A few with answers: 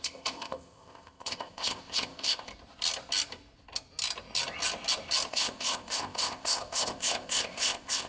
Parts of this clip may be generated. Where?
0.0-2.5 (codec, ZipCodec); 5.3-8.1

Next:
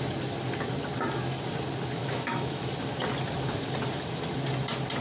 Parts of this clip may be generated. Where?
2.0-2.7 (autoencoder, DAC-VAE)

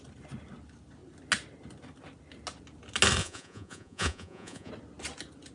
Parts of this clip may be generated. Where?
3.2-4.7 (vocoder, Vocos)

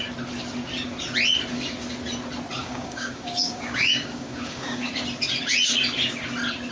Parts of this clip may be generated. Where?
2.6-4.9 (codec, DAC)

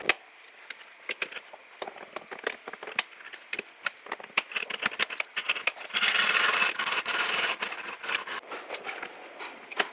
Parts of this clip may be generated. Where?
5.4-8.8 (vocoder, BigVGAN v2)

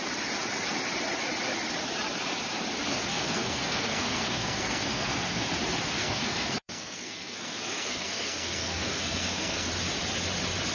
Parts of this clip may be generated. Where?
3.1-5.5 (codec, SNAC); 6.0-9.7

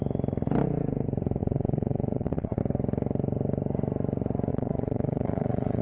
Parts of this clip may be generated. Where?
1.4-2.6 (vocoder, Vocos); 4.5-5.8